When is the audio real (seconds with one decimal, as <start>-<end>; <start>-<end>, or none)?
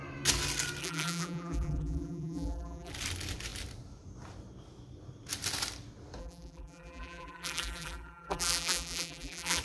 0.0-0.8; 2.9-6.2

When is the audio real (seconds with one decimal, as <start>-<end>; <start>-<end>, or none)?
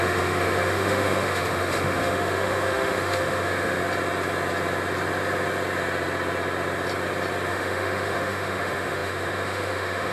3.8-7.5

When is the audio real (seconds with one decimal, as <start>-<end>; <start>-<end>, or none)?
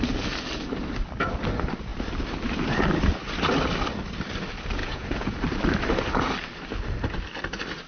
0.0-4.8; 5.4-7.9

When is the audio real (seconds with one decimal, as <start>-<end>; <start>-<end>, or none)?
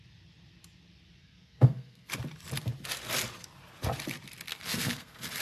0.0-1.2; 2.1-4.5